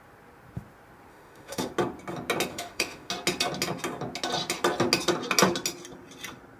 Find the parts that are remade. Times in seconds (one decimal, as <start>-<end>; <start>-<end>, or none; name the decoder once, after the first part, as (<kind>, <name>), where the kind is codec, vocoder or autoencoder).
1.1-1.7 (autoencoder, DAC-VAE); 2.5-3.1

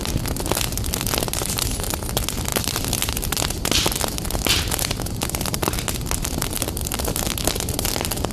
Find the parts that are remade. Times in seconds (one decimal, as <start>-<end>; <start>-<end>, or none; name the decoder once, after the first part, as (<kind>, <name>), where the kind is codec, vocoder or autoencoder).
none

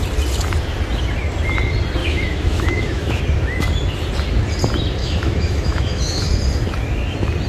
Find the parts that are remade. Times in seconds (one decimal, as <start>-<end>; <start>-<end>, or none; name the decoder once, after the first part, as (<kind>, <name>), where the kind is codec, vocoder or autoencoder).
2.0-3.2 (autoencoder, DAC-VAE); 5.0-6.2

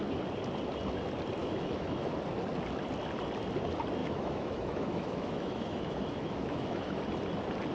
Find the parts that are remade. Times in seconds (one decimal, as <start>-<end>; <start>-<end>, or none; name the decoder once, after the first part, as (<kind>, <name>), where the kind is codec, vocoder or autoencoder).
1.4-2.1 (autoencoder, DAC-VAE); 4.0-7.0

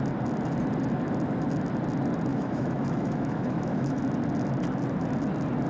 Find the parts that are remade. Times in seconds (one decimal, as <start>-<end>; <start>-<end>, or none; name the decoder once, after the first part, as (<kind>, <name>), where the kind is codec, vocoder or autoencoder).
2.3-4.0 (autoencoder, DAC-VAE)